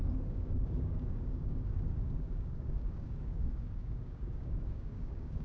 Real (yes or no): no